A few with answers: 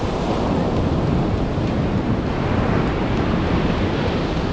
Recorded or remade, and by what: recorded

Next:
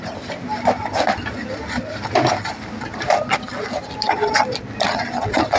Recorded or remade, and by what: recorded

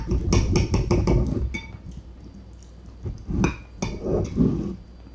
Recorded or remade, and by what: recorded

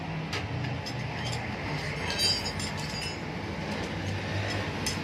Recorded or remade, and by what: recorded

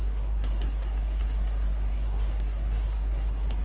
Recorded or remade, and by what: remade, codec, SNAC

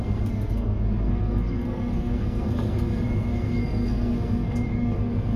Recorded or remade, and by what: remade, codec, SNAC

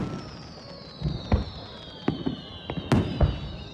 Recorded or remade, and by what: recorded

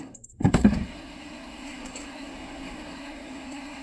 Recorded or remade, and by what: remade, codec, SNAC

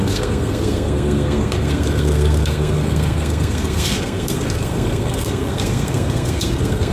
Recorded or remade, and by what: remade, codec, SNAC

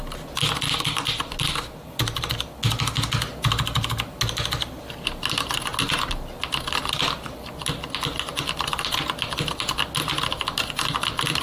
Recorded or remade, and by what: recorded